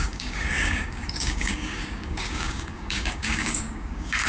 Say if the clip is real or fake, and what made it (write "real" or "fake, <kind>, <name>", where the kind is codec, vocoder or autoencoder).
fake, codec, DAC